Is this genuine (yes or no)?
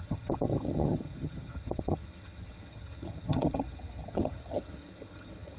no